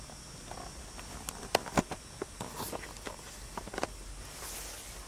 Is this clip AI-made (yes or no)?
no